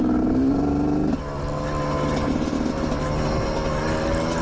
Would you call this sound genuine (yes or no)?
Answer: yes